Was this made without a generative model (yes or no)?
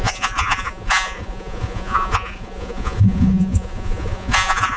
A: no